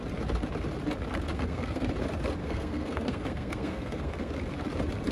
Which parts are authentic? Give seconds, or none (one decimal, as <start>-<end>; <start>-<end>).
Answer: 0.0-1.3; 1.9-2.4; 4.3-5.1